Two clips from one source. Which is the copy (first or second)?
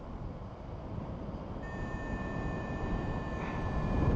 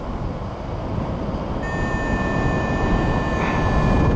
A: first